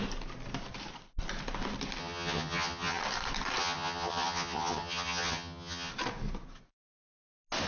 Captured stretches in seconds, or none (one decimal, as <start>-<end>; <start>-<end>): 0.0-2.0; 3.0-3.6; 5.9-7.7